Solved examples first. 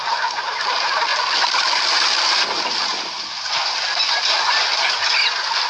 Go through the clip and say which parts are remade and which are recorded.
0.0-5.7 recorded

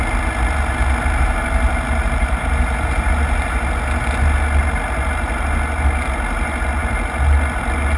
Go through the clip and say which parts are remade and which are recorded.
0.0-8.0 recorded

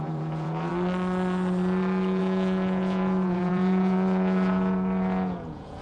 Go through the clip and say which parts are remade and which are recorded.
0.0-0.7 remade; 0.7-2.2 recorded; 2.2-5.8 remade

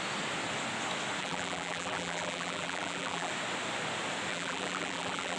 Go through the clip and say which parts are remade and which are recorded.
0.0-1.2 recorded; 1.2-3.3 remade; 3.3-4.3 recorded; 4.3-5.4 remade

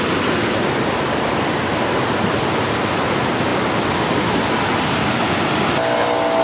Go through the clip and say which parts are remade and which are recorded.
0.0-6.4 recorded